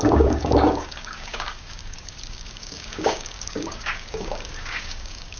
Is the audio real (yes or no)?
no